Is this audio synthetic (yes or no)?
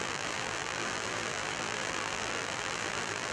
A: yes